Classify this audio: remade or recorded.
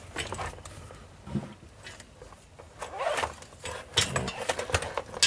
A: recorded